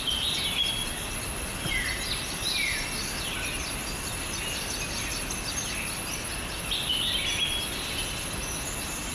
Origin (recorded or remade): recorded